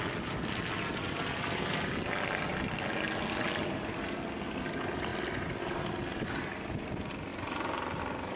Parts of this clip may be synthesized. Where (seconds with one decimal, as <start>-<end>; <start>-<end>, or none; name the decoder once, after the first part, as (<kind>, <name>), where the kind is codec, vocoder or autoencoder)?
none